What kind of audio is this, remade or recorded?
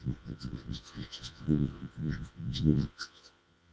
remade